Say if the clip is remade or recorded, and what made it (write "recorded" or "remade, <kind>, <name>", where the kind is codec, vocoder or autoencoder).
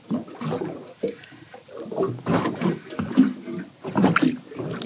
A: recorded